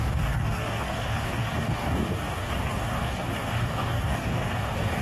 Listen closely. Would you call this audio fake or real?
fake